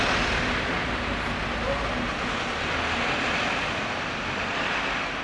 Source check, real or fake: real